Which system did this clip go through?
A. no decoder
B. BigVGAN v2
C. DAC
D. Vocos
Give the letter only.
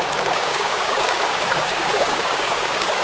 C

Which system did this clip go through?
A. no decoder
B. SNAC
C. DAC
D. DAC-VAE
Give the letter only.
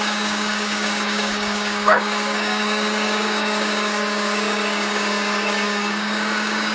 C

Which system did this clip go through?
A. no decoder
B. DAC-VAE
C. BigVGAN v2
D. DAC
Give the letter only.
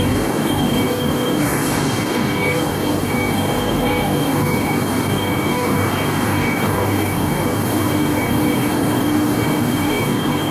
D